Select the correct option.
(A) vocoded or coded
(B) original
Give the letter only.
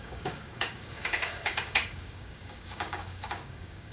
A